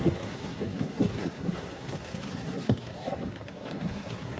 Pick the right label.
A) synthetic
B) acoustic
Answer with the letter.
A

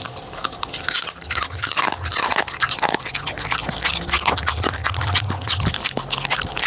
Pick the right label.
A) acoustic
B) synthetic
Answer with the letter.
A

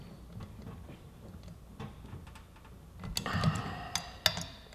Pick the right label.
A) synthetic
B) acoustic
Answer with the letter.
B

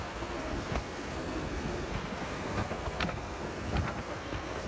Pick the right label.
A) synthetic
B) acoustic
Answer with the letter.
A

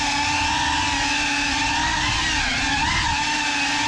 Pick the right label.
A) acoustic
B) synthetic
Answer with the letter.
A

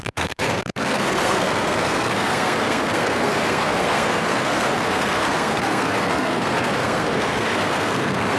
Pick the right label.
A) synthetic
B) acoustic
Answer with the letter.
A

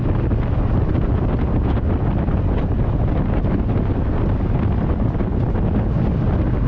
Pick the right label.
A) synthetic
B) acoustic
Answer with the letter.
B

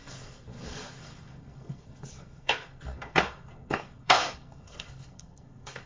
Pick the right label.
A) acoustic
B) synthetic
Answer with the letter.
B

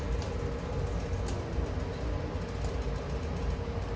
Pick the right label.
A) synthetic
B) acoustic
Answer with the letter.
B